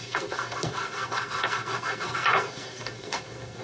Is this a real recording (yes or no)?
no